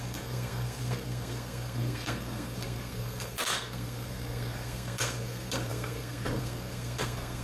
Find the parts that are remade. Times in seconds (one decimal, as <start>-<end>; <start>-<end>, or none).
0.0-7.4